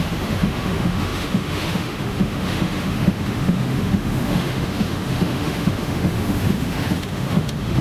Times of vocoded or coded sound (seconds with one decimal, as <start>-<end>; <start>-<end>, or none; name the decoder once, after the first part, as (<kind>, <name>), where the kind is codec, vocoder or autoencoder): 0.0-7.8 (autoencoder, DAC-VAE)